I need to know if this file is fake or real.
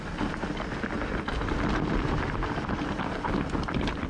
real